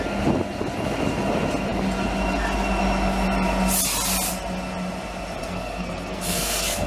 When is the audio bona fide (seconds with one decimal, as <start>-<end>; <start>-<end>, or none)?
0.0-5.4